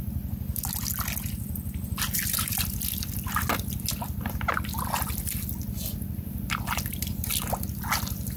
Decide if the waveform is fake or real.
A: real